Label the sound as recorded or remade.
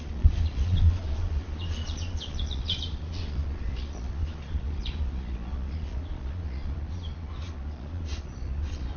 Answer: remade